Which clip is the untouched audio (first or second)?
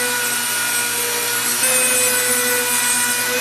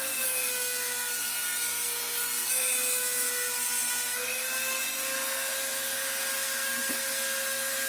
first